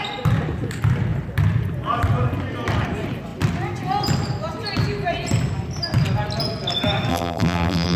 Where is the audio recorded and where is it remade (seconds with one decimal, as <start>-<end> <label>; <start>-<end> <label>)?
0.0-7.1 recorded; 7.1-8.0 remade